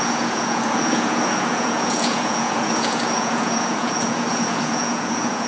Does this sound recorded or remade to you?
remade